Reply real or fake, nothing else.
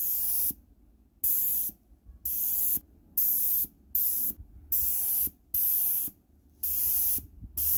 real